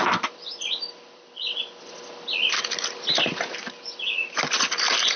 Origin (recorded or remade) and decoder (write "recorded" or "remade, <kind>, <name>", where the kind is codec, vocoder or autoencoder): remade, vocoder, BigVGAN v2